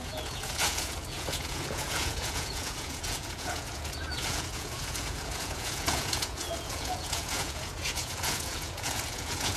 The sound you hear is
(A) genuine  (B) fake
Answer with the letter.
B